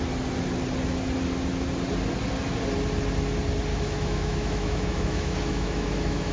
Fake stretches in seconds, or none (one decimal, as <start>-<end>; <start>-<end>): 3.7-6.3